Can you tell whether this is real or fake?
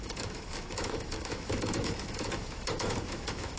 fake